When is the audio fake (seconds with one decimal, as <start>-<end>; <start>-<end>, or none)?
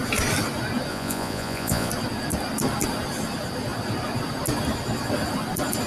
0.9-1.9